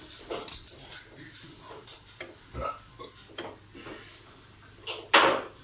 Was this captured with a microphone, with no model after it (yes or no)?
yes